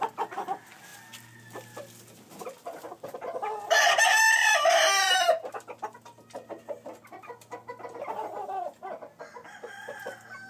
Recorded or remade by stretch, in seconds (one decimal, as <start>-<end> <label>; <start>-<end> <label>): 0.0-10.5 recorded

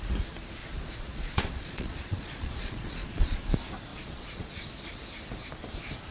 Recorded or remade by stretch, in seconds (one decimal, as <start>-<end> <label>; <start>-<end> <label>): 0.0-0.6 recorded; 0.6-3.4 remade; 3.4-3.9 recorded; 3.9-4.5 remade; 4.5-6.1 recorded

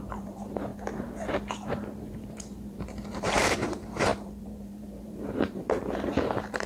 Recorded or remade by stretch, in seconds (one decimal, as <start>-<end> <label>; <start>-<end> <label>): 0.0-6.7 remade

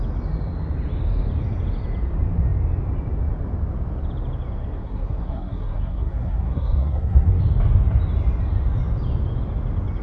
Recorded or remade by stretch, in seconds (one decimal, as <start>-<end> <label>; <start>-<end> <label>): 0.0-4.8 recorded; 4.8-7.4 remade; 7.4-10.0 recorded

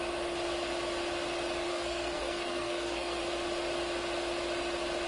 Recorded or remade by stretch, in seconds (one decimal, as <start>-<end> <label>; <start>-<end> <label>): 0.0-1.7 recorded; 1.7-3.2 remade; 3.2-5.1 recorded

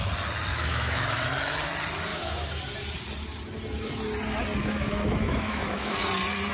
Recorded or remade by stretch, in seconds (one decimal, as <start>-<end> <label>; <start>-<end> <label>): 0.0-0.5 recorded; 0.5-1.3 remade; 1.3-2.1 recorded; 2.1-2.6 remade; 2.6-4.6 recorded; 4.6-5.9 remade; 5.9-6.5 recorded

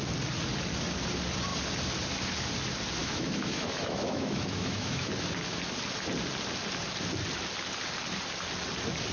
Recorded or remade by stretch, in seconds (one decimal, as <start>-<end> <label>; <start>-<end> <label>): 0.0-3.0 recorded; 3.0-5.1 remade; 5.1-9.1 recorded

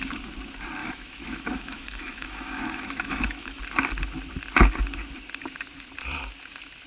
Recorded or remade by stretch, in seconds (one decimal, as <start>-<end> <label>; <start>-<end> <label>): 0.0-0.8 recorded; 0.8-3.6 remade; 3.6-6.9 recorded